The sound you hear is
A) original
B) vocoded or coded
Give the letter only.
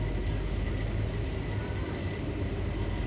A